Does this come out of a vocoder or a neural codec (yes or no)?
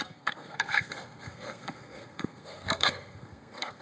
yes